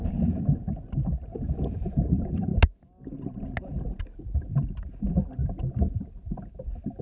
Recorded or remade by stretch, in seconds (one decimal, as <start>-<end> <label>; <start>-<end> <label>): 0.0-7.0 recorded